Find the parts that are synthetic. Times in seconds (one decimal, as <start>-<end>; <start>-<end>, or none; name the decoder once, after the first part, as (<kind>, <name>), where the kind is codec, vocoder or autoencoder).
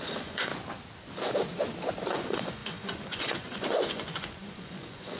0.0-0.5 (vocoder, Vocos); 2.1-5.2